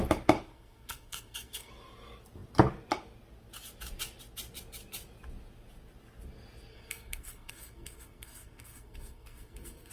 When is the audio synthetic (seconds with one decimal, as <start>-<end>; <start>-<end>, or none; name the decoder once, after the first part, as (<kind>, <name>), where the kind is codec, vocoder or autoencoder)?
0.5-1.7 (codec, SNAC); 6.7-9.9